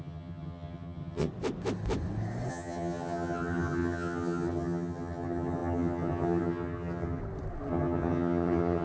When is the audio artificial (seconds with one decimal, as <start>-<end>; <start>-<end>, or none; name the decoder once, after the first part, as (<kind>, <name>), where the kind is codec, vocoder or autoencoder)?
0.0-1.3 (vocoder, HiFi-GAN); 2.5-7.2; 7.7-8.8